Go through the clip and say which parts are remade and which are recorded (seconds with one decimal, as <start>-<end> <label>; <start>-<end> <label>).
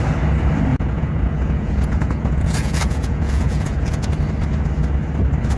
0.0-0.7 recorded; 0.7-4.1 remade; 4.1-5.6 recorded